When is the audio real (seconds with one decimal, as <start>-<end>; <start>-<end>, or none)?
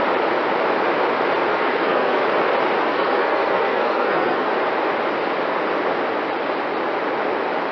0.0-1.5; 2.2-2.8; 4.5-7.7